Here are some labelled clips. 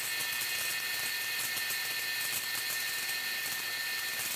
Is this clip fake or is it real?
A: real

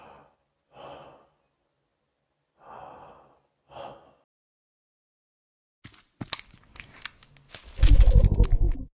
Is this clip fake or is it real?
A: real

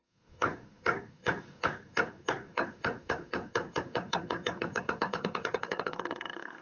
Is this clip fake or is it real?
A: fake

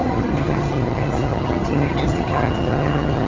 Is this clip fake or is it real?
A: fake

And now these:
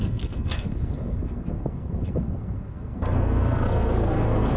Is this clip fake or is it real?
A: fake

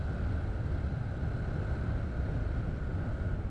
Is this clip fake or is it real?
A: real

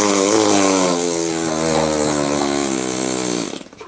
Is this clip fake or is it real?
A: real